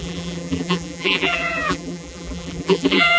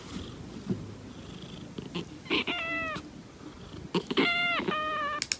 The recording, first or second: second